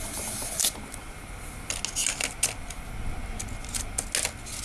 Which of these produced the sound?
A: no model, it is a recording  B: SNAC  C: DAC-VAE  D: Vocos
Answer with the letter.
A